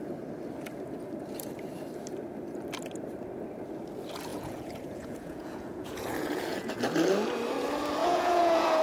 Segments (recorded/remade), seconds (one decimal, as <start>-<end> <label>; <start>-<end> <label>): 0.0-4.3 recorded; 4.3-6.7 remade; 6.7-8.0 recorded; 8.0-8.8 remade